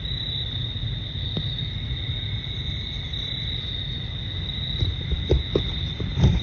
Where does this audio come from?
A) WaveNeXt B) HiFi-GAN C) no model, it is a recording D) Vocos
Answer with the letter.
C